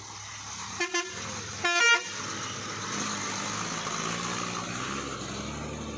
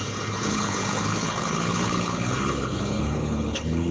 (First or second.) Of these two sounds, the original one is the first